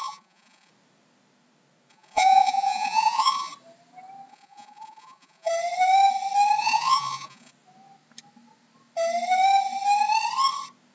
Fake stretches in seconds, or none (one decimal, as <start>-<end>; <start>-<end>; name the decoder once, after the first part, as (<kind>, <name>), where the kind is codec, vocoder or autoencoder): 0.0-0.7 (vocoder, Vocos); 1.9-3.5; 4.3-5.5; 6.6-7.5